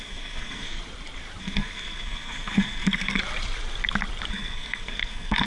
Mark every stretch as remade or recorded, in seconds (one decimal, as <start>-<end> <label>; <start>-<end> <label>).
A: 0.0-0.8 remade; 0.8-1.4 recorded; 1.4-3.2 remade; 3.2-4.3 recorded; 4.3-5.5 remade